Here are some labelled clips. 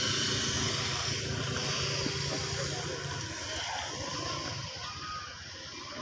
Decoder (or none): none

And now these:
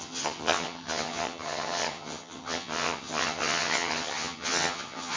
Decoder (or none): vocoder, HiFi-GAN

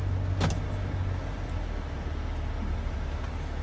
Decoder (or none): none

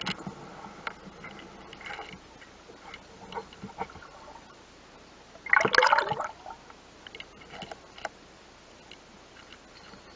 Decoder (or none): none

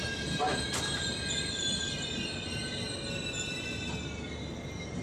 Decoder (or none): none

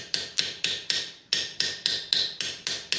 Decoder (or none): none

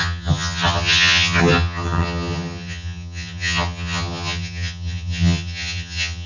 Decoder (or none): vocoder, HiFi-GAN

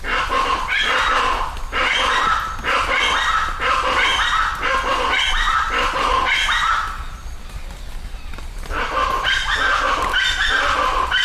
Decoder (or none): vocoder, BigVGAN v2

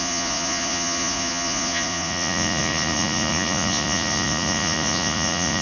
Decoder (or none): vocoder, Vocos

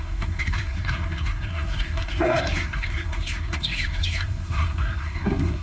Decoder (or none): codec, SNAC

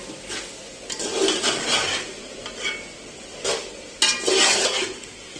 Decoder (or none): none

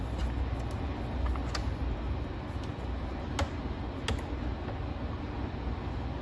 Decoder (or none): none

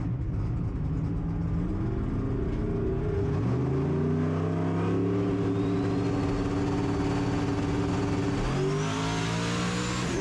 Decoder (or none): none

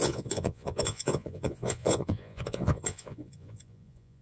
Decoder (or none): vocoder, Vocos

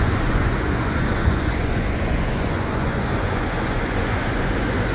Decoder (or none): vocoder, Vocos